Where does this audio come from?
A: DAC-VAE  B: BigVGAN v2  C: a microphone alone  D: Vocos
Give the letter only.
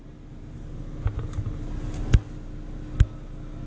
C